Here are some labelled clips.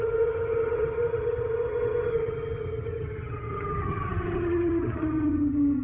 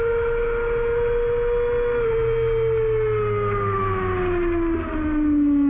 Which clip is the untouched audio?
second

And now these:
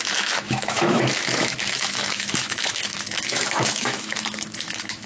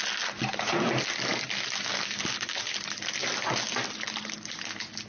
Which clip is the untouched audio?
second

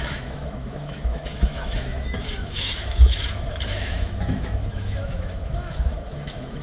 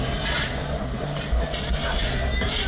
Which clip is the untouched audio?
second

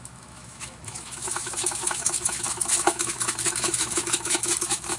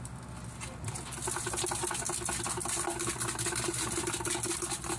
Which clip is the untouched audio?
second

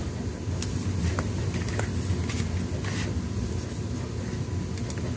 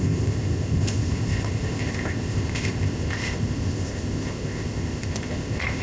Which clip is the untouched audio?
first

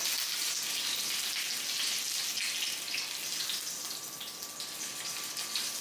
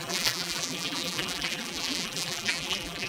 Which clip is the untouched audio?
first